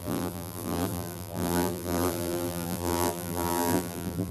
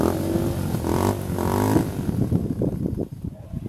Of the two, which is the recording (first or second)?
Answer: second